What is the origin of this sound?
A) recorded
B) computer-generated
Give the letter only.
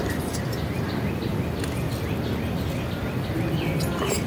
A